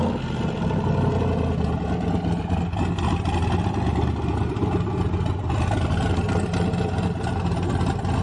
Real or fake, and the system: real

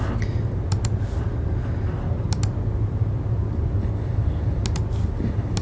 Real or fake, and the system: real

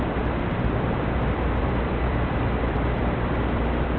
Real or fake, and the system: fake, vocoder, BigVGAN v2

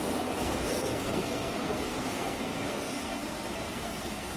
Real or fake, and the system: fake, codec, SNAC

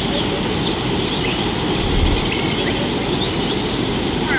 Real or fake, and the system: real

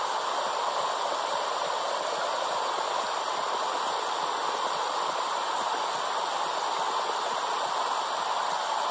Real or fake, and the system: real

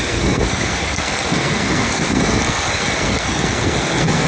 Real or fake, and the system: fake, codec, SNAC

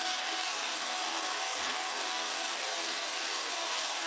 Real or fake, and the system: fake, codec, DAC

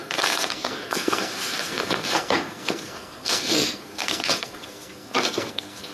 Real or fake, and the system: fake, codec, SNAC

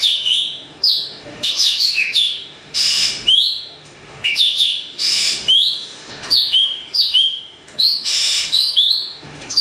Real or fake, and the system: fake, autoencoder, DAC-VAE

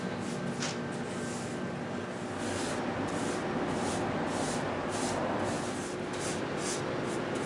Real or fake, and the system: real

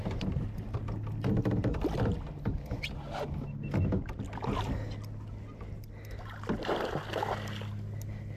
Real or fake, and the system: real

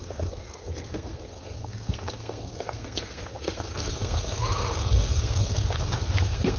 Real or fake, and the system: fake, codec, SNAC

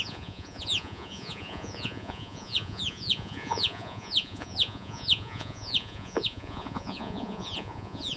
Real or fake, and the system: fake, vocoder, Vocos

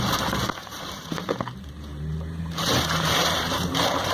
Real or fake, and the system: fake, vocoder, BigVGAN v2